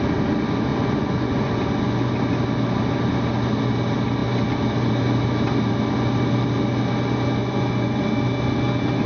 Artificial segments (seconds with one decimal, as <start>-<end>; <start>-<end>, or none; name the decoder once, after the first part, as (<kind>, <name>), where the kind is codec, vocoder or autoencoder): 0.7-2.1 (vocoder, Vocos); 7.4-8.0